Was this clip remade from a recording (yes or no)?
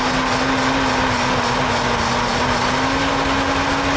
no